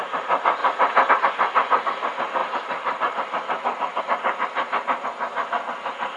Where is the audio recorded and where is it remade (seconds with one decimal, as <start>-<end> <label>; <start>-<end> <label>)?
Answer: 0.0-2.4 recorded; 2.4-4.0 remade; 4.0-6.2 recorded